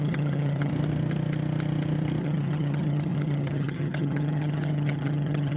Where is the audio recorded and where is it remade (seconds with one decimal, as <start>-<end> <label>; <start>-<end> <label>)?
0.0-0.7 remade; 0.7-2.2 recorded; 2.2-5.6 remade